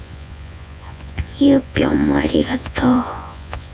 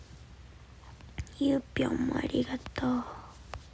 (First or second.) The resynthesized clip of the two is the first